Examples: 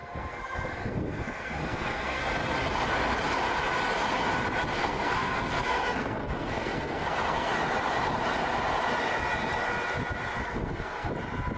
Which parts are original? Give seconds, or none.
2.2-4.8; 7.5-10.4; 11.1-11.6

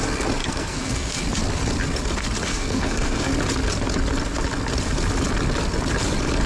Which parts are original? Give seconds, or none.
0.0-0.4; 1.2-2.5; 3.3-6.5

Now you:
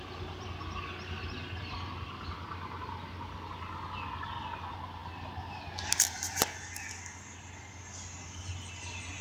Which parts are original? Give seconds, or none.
0.0-9.2

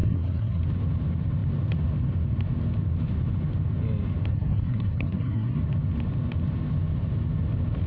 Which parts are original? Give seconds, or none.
0.6-4.3; 5.6-7.9

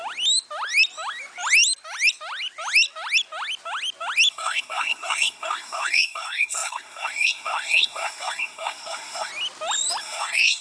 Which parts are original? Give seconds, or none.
0.0-4.3; 9.3-10.0